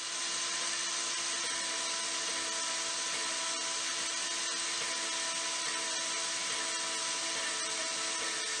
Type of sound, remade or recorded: recorded